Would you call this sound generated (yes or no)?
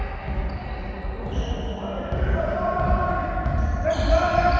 no